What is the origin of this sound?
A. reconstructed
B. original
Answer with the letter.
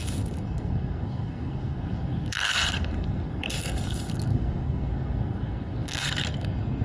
A